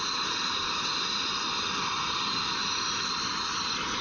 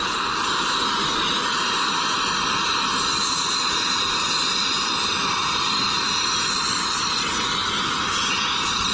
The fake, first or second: first